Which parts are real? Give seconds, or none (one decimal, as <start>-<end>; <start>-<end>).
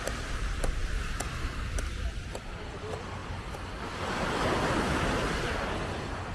0.0-6.3